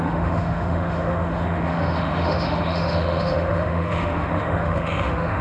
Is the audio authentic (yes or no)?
no